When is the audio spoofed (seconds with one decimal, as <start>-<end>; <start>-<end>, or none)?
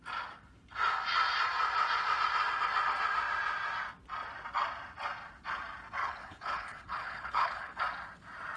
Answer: 6.0-7.8